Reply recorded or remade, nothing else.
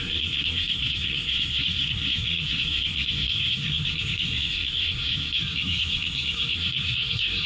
remade